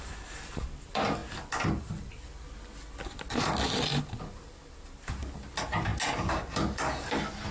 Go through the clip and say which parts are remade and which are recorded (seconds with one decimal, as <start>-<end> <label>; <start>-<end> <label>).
0.0-7.5 recorded